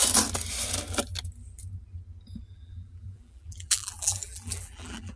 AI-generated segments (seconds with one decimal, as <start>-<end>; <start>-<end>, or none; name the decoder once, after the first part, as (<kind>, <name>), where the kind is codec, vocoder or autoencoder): 2.5-5.2 (vocoder, BigVGAN v2)